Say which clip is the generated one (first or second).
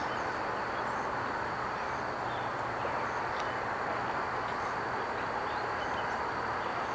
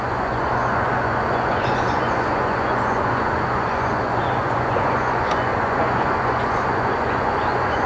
second